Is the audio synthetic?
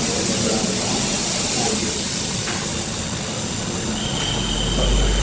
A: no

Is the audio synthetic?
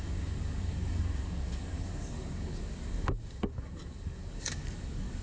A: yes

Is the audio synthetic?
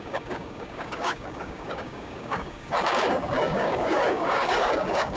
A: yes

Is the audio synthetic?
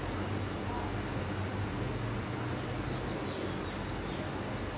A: no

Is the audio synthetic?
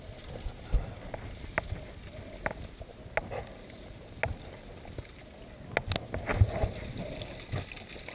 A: no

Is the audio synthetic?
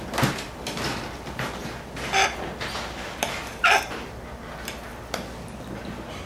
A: no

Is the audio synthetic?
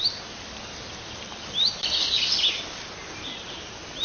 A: no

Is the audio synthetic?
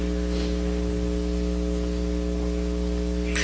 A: no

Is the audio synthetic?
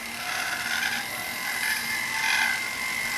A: no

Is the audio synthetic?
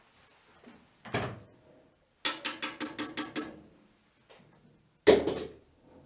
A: no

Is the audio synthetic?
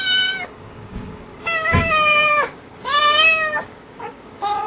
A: yes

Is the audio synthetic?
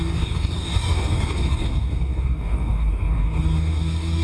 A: yes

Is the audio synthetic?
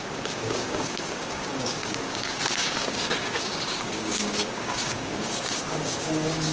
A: yes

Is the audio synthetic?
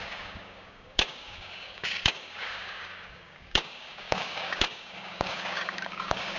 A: yes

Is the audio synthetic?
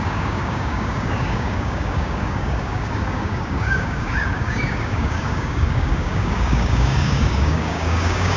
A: yes